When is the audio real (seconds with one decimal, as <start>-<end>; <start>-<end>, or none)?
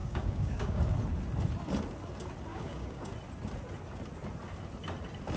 0.8-2.5; 3.1-5.4